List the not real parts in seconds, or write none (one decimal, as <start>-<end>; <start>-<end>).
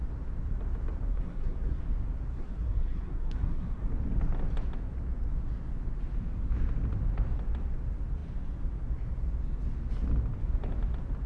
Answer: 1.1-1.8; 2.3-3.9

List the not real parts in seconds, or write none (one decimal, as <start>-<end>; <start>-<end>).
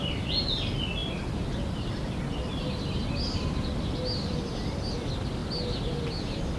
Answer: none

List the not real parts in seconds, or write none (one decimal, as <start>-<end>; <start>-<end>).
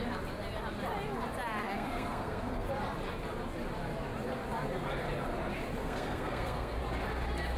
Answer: 1.6-2.7; 5.8-6.8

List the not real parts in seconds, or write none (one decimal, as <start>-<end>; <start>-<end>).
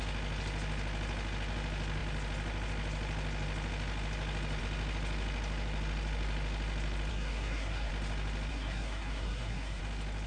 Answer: 7.1-7.9; 8.5-9.8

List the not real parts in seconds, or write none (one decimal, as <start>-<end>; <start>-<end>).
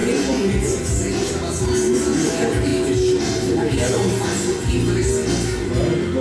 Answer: none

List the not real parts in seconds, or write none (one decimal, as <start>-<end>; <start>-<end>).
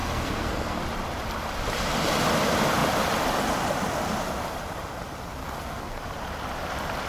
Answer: 0.0-0.8; 5.4-6.0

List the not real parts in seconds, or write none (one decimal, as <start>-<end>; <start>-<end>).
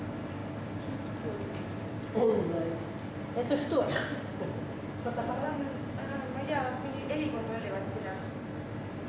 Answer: none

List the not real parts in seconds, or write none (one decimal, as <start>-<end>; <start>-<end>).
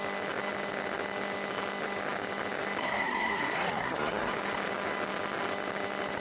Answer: 2.8-4.3